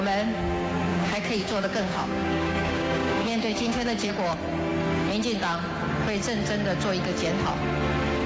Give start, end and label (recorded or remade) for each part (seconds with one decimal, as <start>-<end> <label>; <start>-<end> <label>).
0.0-0.9 recorded; 0.9-4.1 remade; 4.1-8.3 recorded